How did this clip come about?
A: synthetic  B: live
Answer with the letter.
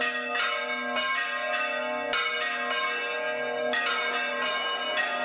B